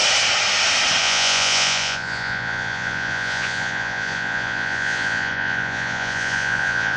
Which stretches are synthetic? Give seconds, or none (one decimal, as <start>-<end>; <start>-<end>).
1.0-7.0